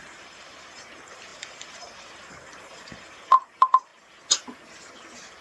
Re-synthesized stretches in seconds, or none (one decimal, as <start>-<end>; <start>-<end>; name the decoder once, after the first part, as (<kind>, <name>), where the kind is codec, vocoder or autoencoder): 0.0-3.9 (vocoder, BigVGAN v2)